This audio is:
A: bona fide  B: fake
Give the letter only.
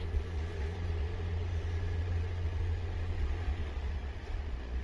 B